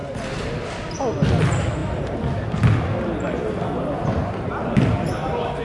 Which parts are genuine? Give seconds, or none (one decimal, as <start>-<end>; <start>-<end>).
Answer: 0.0-5.6